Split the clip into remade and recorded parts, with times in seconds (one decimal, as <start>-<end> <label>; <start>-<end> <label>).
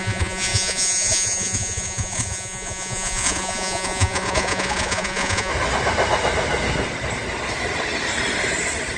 0.0-5.5 remade; 5.5-9.0 recorded